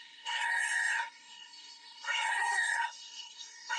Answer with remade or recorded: remade